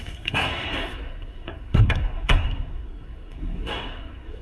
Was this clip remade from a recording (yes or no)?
yes